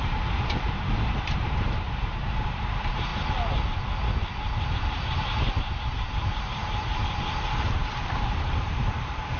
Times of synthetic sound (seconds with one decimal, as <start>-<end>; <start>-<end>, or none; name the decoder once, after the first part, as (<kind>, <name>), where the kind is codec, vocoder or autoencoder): 0.0-3.1 (vocoder, BigVGAN v2); 4.7-9.4